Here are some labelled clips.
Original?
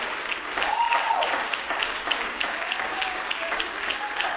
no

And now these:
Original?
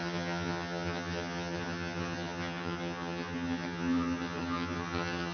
no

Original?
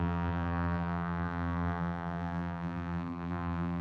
no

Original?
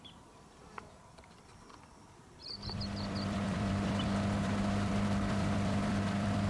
no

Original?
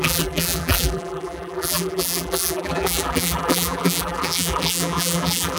no